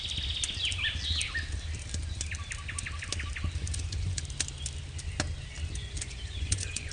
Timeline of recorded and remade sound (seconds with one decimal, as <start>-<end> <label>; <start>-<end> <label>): 0.0-3.6 recorded; 3.6-4.2 remade; 4.2-5.8 recorded; 5.8-6.9 remade